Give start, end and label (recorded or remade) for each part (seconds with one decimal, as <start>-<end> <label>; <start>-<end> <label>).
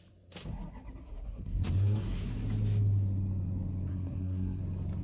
0.0-1.0 recorded; 1.0-2.3 remade; 2.3-3.9 recorded; 3.9-4.6 remade; 4.6-5.0 recorded